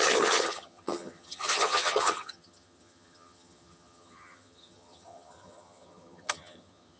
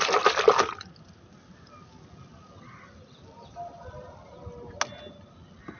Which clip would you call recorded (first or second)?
second